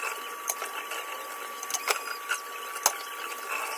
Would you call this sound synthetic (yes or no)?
no